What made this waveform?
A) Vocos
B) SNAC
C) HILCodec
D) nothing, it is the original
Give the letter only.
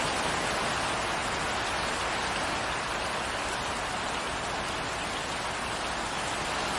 D